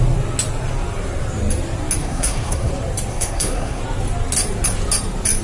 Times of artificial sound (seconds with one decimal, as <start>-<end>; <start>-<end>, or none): 2.0-2.7; 3.1-3.8